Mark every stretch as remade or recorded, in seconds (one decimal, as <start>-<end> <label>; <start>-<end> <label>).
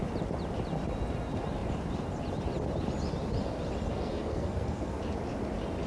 0.0-3.9 recorded; 3.9-5.0 remade; 5.0-5.9 recorded